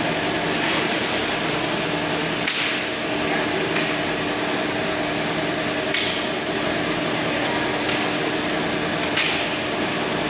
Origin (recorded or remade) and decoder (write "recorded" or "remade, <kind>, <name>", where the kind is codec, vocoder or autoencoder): recorded